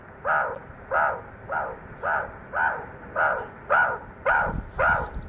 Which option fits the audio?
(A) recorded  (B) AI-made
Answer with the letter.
A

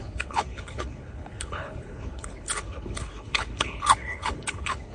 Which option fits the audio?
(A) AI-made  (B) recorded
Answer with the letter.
A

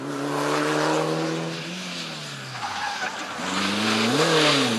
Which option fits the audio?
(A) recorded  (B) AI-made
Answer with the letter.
A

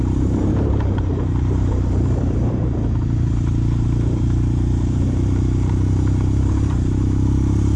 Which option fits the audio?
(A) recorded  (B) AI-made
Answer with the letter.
B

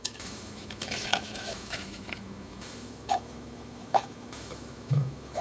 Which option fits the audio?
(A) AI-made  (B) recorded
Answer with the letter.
A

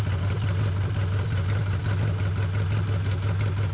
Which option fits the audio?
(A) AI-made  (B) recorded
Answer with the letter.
B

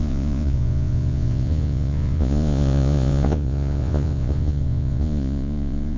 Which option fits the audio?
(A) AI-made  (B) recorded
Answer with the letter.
A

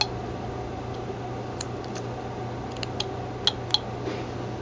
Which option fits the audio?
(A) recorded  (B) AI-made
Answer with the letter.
A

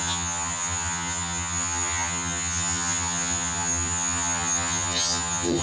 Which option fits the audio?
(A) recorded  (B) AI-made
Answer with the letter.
B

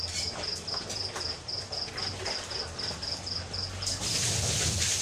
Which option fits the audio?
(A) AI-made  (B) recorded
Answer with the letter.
B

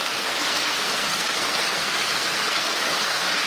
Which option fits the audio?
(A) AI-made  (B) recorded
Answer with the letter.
A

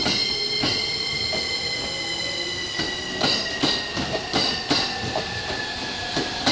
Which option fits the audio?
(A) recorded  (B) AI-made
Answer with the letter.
A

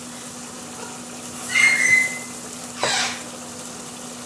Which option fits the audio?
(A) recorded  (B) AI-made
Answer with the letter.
A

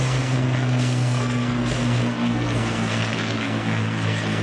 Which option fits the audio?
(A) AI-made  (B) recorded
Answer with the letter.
A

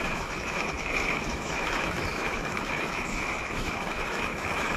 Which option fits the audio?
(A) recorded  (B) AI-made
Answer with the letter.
B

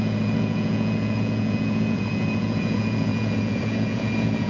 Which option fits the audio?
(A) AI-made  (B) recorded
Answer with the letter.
A